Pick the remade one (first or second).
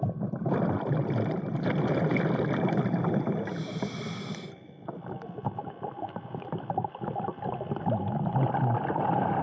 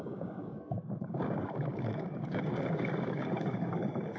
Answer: second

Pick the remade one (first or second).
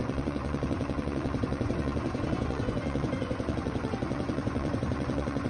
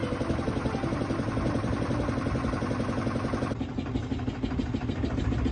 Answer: first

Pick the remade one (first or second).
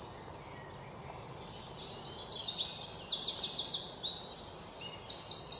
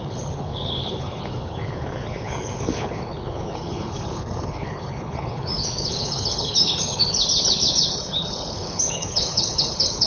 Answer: second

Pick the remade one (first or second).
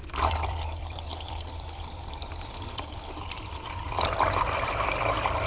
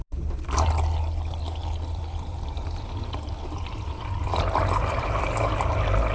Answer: first